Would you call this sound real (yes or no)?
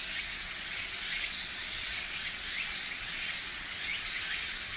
no